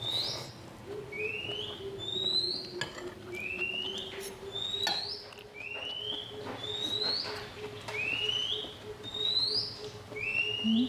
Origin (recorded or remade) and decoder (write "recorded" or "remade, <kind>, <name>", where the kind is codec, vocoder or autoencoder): recorded